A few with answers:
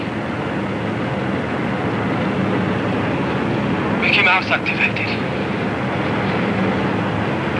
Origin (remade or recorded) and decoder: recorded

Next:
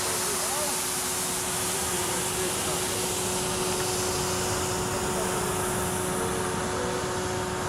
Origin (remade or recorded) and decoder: recorded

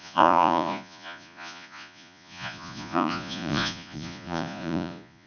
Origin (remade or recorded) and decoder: remade, vocoder, Vocos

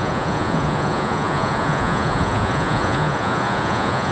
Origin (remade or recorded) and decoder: remade, vocoder, Vocos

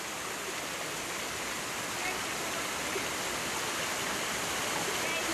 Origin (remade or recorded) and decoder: recorded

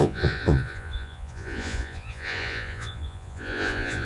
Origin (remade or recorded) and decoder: remade, vocoder, Vocos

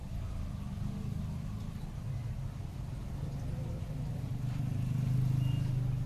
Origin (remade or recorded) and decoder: recorded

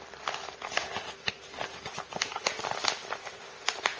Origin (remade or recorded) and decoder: recorded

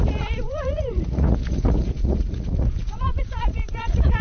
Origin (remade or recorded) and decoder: remade, vocoder, Vocos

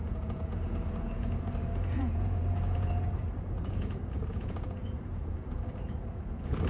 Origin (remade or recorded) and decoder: remade, vocoder, Vocos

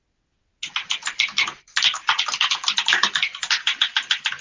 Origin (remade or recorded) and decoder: recorded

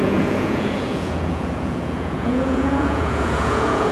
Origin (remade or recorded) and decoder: remade, vocoder, Vocos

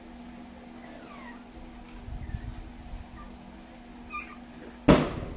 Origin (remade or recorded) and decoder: recorded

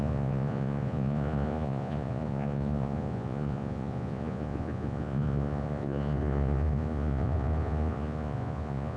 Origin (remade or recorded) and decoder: remade, vocoder, Vocos